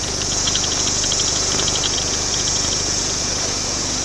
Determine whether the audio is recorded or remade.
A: remade